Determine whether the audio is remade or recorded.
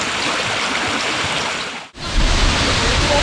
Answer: recorded